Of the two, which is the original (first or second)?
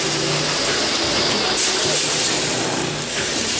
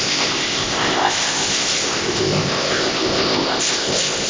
first